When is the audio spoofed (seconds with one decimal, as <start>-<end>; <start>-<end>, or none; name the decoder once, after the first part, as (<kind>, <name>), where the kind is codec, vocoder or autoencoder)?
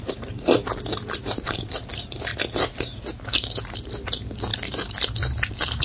0.0-0.6 (vocoder, BigVGAN v2); 1.2-2.3; 3.1-5.8